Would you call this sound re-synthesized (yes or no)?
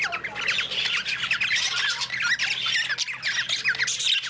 no